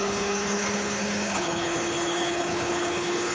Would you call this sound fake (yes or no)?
yes